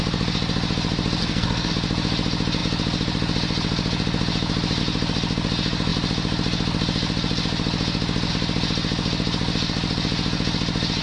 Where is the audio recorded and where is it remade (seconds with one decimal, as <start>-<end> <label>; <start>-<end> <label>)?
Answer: 0.0-1.2 recorded; 1.2-1.7 remade; 1.7-11.0 recorded